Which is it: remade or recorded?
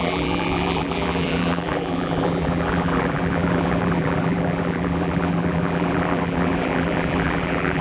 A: remade